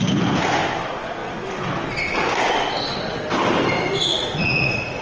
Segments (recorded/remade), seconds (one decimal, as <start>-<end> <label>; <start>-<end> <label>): 0.0-4.1 recorded; 4.1-5.0 remade